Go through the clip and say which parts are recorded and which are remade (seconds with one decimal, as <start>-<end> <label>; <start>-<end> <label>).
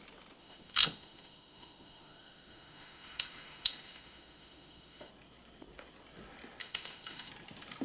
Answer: 0.0-0.4 recorded; 0.4-5.1 remade; 5.1-6.6 recorded; 6.6-7.3 remade; 7.3-7.8 recorded